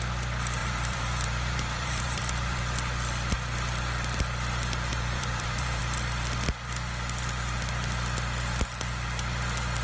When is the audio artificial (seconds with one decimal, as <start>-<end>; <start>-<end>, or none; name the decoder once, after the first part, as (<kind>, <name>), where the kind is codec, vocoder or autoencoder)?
0.6-2.6 (vocoder, BigVGAN v2); 4.9-5.8